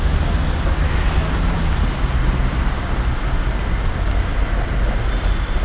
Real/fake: real